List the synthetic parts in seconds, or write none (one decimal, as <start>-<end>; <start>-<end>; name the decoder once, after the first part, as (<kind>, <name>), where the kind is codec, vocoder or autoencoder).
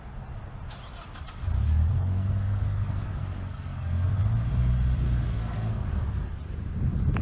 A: 1.9-4.2 (codec, SNAC); 5.3-6.3